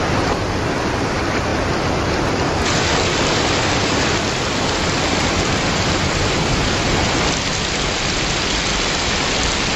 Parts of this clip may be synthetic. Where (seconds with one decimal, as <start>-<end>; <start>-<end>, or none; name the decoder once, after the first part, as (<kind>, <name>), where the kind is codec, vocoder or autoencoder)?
none